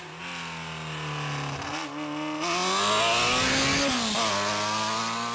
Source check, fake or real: real